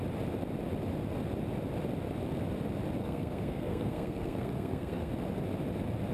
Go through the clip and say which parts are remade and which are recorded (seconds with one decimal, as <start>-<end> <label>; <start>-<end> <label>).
0.0-3.0 recorded; 3.0-5.1 remade; 5.1-6.1 recorded